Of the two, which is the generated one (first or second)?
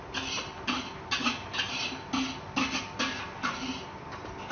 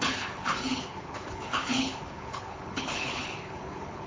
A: second